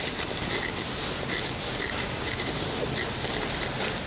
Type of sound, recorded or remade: recorded